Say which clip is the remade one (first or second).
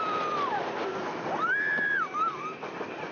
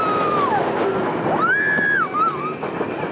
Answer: first